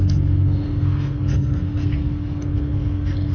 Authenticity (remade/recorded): remade